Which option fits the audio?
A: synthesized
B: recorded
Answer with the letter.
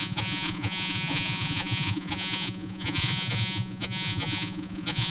A